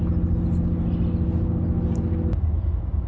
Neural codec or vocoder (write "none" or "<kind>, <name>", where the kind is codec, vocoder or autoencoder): none